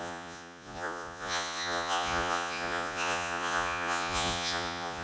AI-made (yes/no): yes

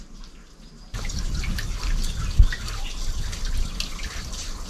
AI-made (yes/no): no